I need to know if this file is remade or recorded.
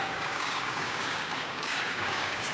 remade